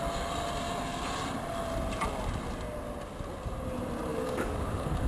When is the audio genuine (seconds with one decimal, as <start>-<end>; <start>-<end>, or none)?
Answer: 0.0-4.1